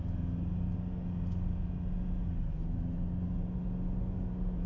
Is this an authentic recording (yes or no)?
yes